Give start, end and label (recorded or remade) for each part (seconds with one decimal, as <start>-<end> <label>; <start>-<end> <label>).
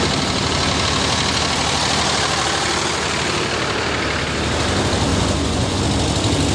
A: 0.0-5.1 recorded; 5.1-5.8 remade; 5.8-6.5 recorded